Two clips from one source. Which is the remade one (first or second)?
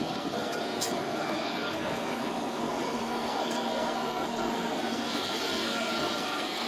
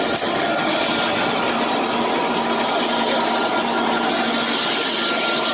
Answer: first